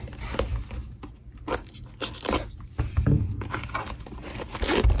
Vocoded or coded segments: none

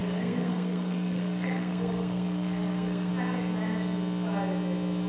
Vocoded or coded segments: 0.0-3.1

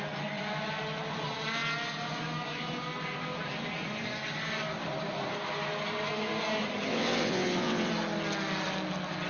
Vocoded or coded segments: 6.9-7.9

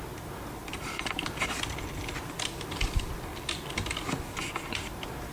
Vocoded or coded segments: 0.6-2.1; 3.3-3.9

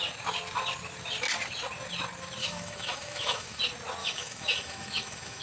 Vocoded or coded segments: 2.4-3.6; 4.0-5.4

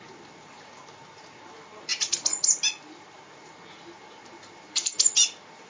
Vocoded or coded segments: none

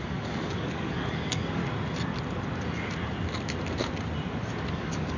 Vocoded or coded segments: 0.0-1.6; 4.7-5.2